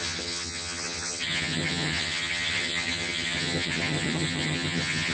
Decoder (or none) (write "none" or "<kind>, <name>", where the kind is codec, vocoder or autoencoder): vocoder, HiFi-GAN